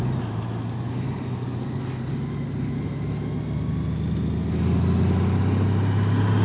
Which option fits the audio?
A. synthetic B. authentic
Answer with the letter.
B